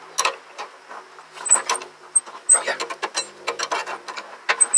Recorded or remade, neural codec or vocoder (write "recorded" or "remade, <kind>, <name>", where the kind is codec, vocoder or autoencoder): recorded